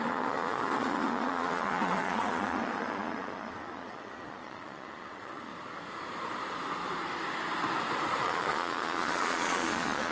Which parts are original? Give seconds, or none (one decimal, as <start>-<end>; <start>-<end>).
5.5-8.2